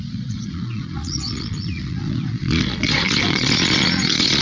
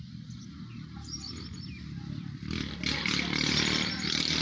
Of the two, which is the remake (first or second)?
first